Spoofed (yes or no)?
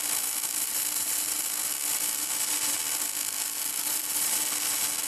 yes